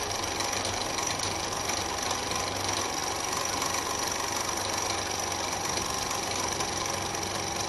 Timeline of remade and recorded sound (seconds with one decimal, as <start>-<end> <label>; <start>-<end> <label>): 0.0-7.7 recorded